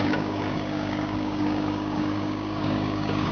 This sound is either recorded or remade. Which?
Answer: remade